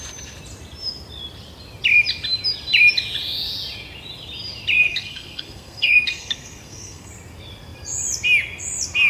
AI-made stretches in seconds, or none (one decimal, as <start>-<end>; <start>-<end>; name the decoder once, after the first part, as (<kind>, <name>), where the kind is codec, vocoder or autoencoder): 4.8-7.1 (codec, SNAC)